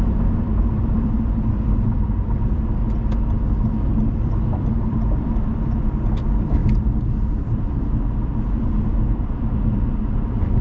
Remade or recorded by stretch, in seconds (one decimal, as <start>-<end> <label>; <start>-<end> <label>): 0.0-2.8 remade; 2.8-4.1 recorded; 4.1-10.6 remade